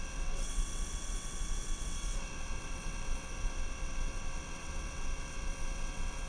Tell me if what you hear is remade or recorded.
remade